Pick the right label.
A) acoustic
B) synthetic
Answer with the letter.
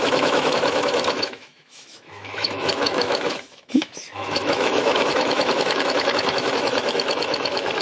B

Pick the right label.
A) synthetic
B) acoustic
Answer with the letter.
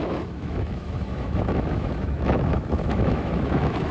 A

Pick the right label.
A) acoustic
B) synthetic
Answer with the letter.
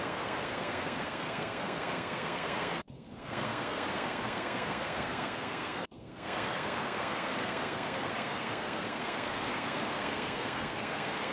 B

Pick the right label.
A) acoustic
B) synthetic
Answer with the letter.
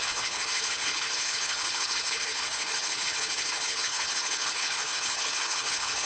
B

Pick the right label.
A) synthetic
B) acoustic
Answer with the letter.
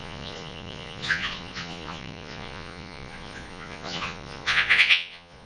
A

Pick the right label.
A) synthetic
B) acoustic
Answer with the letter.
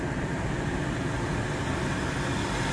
B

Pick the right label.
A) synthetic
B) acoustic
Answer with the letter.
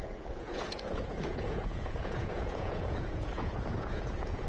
A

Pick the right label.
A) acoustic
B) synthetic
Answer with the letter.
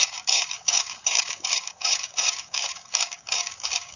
B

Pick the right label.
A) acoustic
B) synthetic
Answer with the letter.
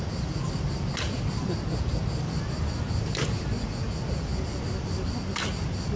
A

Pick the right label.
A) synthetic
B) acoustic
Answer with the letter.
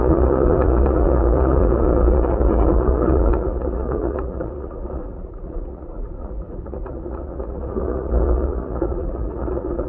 A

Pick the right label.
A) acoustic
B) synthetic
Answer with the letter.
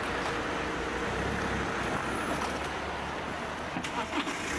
A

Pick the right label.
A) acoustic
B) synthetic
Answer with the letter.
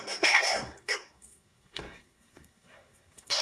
B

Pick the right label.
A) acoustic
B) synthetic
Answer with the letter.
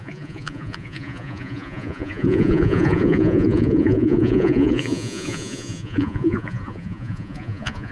B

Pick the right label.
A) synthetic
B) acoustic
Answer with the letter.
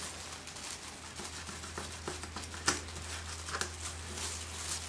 B